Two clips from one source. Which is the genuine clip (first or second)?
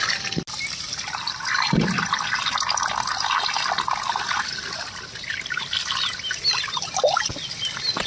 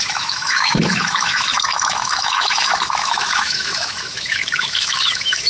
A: first